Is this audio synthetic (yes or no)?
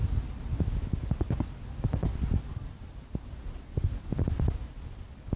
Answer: no